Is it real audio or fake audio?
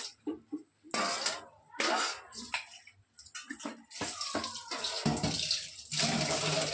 real